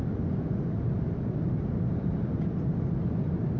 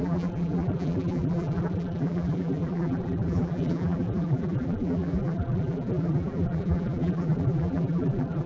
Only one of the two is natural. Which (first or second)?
first